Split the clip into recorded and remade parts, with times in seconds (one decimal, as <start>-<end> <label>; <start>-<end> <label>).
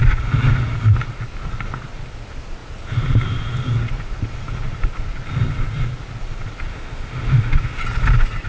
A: 0.0-6.7 recorded; 6.7-7.8 remade; 7.8-8.5 recorded